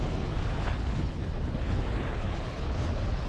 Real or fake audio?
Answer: fake